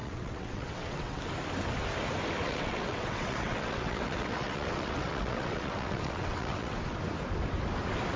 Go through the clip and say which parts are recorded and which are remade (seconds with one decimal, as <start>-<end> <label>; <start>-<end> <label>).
0.0-1.2 remade; 1.2-2.4 recorded; 2.4-6.8 remade; 6.8-8.2 recorded